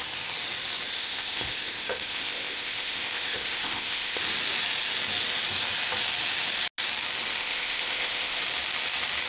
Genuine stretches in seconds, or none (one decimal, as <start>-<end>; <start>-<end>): 0.0-0.9; 4.2-7.4; 8.4-9.3